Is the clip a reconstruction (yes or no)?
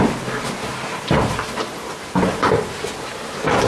no